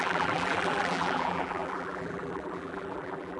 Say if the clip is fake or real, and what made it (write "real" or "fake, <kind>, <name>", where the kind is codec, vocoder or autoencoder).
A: fake, vocoder, BigVGAN v2